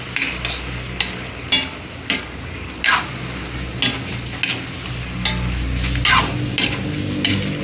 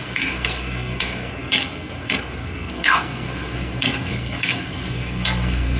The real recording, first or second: first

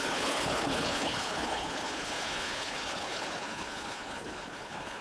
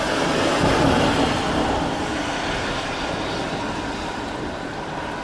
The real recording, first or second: second